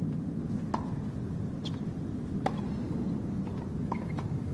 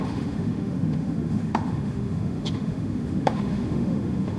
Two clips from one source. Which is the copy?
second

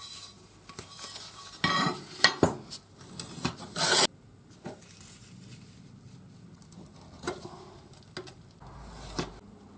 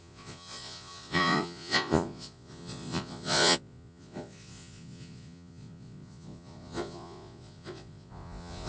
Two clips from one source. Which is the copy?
second